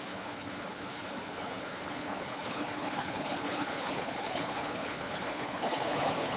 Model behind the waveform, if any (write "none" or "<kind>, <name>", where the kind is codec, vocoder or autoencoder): codec, HILCodec